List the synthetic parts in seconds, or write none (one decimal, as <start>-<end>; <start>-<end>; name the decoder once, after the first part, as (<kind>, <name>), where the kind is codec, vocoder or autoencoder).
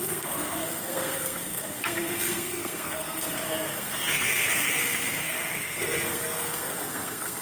0.0-7.4 (codec, SNAC)